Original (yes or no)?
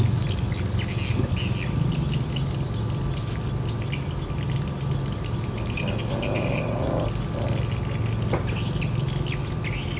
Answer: yes